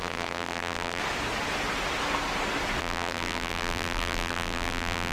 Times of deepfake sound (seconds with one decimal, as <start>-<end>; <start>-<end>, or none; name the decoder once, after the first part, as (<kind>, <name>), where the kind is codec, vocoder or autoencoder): 0.0-1.0 (vocoder, BigVGAN v2); 2.8-5.1